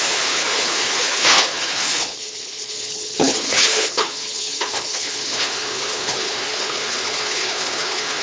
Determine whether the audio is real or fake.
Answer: fake